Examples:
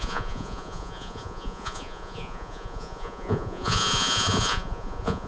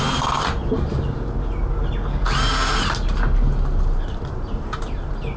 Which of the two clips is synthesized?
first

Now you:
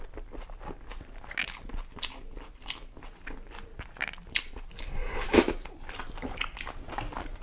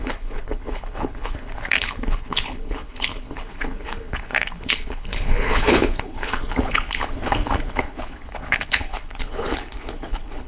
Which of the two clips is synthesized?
second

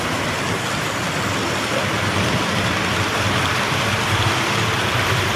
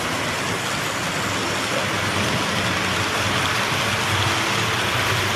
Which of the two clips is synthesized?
first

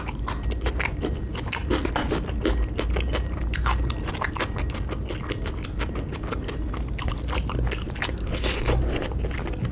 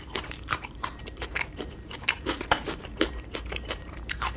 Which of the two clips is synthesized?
second